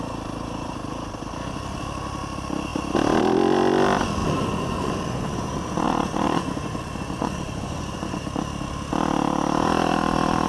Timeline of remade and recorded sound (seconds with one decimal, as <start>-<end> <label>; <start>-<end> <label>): 0.0-4.2 recorded; 4.2-8.2 remade; 8.2-10.5 recorded